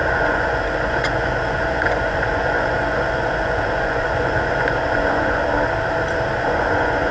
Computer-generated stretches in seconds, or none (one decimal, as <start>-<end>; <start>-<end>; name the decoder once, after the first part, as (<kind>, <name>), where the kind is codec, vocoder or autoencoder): 0.0-5.4 (vocoder, Vocos); 6.4-7.1